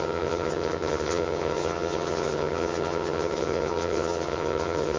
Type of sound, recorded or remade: remade